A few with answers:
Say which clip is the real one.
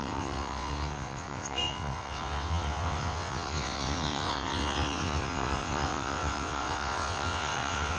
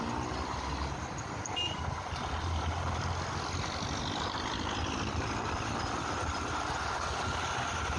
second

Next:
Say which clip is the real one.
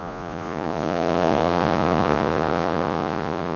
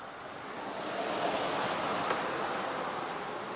second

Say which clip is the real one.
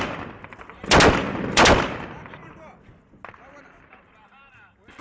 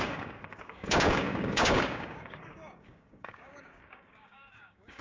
first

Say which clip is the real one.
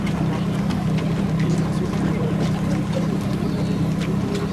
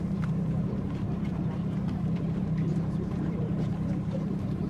first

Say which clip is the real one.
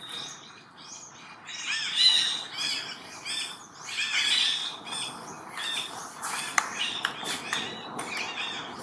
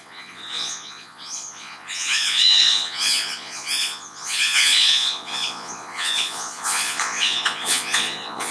first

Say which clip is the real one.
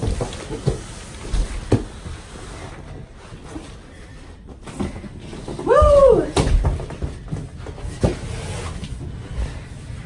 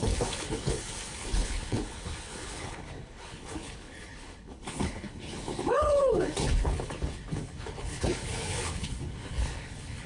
first